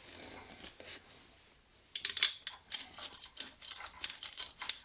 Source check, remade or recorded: recorded